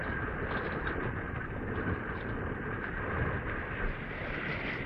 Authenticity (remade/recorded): recorded